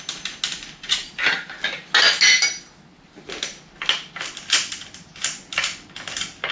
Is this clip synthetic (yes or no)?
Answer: no